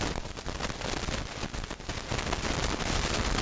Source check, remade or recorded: recorded